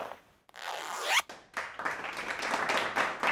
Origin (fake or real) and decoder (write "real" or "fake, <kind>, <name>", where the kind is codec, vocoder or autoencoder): real